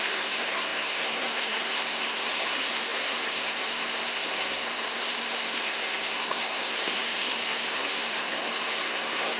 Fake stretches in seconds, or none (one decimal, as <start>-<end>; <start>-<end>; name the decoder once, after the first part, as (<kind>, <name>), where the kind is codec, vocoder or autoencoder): 0.0-9.4 (codec, SNAC)